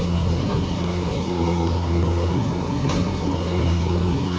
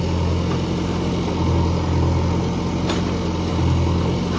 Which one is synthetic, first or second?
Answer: first